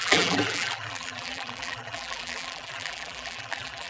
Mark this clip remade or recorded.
remade